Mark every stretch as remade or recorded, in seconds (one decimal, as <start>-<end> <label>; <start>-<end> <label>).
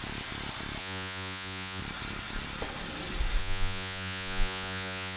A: 0.0-0.8 recorded; 0.8-1.8 remade; 1.8-3.4 recorded; 3.4-5.2 remade